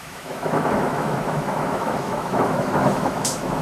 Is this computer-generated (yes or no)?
yes